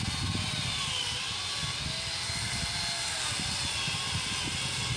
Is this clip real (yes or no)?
yes